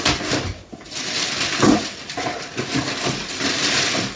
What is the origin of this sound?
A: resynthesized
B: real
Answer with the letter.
B